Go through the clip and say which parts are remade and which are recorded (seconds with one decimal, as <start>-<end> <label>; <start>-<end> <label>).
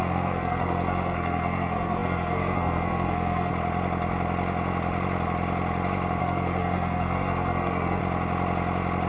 0.0-3.5 remade; 3.5-6.2 recorded; 6.2-8.0 remade; 8.0-9.1 recorded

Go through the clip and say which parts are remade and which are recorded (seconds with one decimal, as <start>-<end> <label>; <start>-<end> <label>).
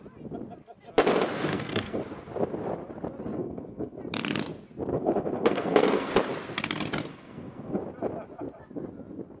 0.0-1.5 recorded; 1.5-2.0 remade; 2.0-3.3 recorded; 3.3-4.0 remade; 4.0-4.9 recorded; 4.9-6.1 remade; 6.1-7.1 recorded; 7.1-7.8 remade; 7.8-9.4 recorded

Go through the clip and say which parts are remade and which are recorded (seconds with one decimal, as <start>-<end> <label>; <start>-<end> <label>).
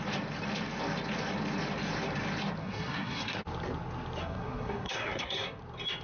0.0-2.6 recorded; 2.6-3.4 remade; 3.4-4.2 recorded; 4.2-5.6 remade; 5.6-6.0 recorded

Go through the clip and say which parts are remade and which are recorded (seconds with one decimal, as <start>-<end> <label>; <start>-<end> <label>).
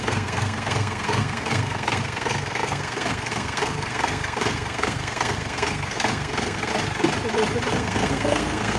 0.0-6.7 remade; 6.7-7.7 recorded; 7.7-8.8 remade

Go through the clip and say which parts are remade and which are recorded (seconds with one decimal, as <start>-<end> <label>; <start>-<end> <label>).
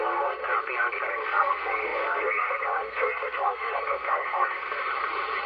0.0-0.4 remade; 0.4-1.1 recorded; 1.1-4.9 remade; 4.9-5.5 recorded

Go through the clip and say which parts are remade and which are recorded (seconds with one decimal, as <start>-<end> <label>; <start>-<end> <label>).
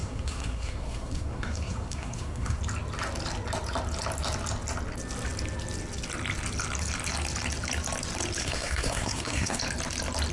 0.0-2.6 remade; 2.6-8.4 recorded; 8.4-9.6 remade; 9.6-10.3 recorded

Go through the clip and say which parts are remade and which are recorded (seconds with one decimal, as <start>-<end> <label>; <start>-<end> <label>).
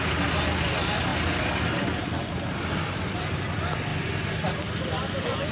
0.0-5.5 recorded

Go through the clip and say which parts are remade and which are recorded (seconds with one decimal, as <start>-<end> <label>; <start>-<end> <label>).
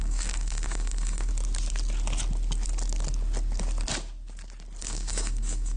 0.0-1.3 remade; 1.3-4.8 recorded; 4.8-5.8 remade